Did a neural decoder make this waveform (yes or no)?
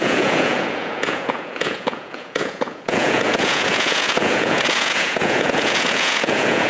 yes